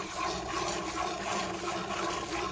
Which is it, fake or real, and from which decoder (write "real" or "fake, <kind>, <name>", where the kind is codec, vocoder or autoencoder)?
real